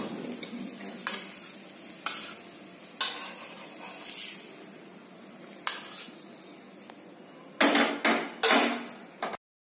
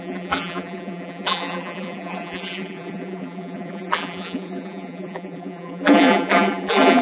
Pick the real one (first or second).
first